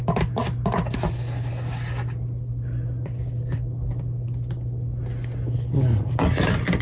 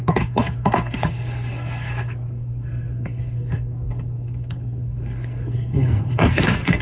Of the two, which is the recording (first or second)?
first